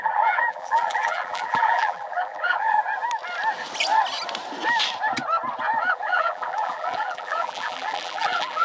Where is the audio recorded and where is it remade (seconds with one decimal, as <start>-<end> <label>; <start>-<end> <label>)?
0.0-2.8 remade; 2.8-5.8 recorded; 5.8-8.6 remade